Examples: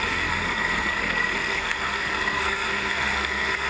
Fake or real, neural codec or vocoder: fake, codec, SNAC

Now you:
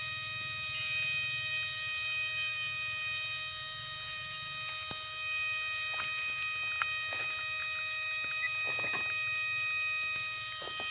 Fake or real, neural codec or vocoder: real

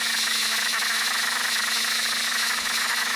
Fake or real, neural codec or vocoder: fake, autoencoder, DAC-VAE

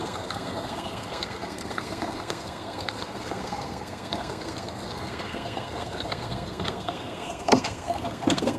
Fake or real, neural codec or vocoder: fake, codec, SNAC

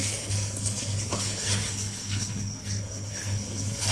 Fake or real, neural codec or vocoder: fake, codec, SNAC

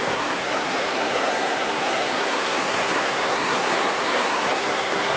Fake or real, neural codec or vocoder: fake, codec, SNAC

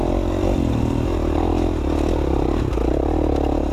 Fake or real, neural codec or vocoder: real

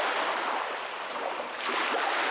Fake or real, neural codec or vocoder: real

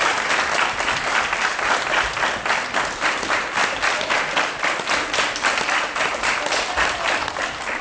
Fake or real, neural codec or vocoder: fake, vocoder, BigVGAN v2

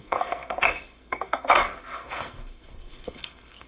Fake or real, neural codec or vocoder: fake, codec, SNAC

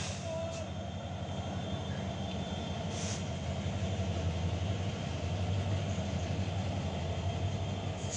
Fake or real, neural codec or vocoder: real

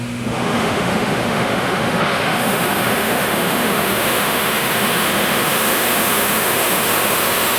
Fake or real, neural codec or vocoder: fake, autoencoder, DAC-VAE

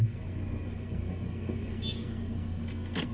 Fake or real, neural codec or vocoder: fake, codec, SNAC